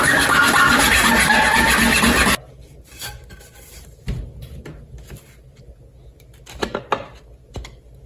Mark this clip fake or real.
real